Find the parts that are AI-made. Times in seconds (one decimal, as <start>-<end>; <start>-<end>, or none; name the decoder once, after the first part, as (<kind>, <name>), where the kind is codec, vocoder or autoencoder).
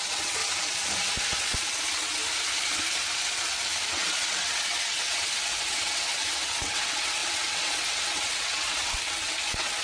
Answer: 0.0-0.4 (vocoder, WaveNeXt); 1.3-2.2; 3.9-9.8